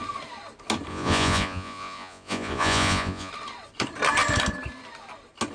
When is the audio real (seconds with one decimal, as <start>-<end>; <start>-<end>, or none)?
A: 0.0-0.9; 3.3-5.5